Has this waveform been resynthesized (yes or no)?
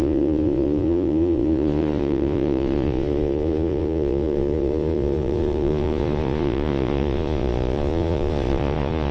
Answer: yes